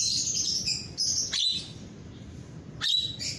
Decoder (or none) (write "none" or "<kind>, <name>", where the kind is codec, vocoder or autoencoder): none